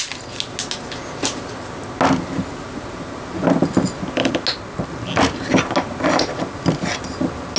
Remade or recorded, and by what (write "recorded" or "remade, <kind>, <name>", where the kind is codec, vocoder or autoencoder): recorded